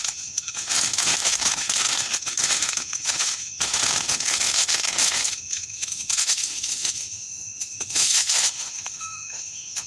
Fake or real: fake